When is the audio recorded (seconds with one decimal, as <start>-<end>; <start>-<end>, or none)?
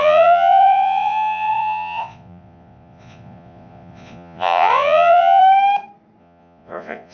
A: 5.4-6.2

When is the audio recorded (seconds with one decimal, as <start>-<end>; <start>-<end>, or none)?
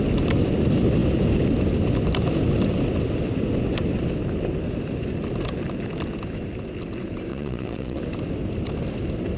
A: 0.0-7.3; 8.0-9.4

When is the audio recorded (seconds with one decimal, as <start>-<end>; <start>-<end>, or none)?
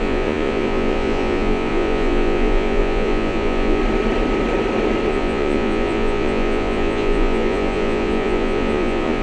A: 3.8-5.1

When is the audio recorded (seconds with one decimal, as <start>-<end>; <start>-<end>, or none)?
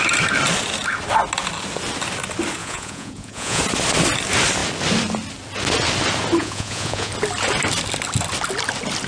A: 0.0-2.6; 3.6-6.4; 7.1-9.1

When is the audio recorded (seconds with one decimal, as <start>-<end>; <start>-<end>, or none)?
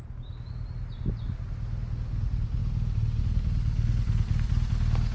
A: 0.0-5.1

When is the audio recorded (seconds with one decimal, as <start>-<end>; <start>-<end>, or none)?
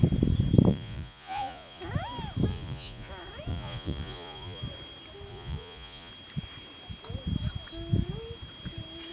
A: 0.0-0.7; 1.8-2.5; 3.1-3.5; 4.6-5.3; 6.1-9.1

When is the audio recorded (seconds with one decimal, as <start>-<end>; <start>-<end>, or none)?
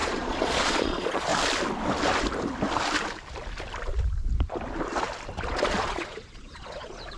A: 1.3-5.5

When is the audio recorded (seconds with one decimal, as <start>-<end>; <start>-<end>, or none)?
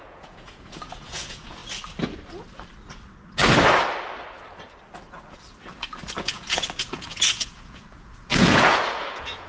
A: 1.6-6.2